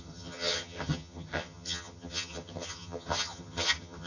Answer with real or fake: fake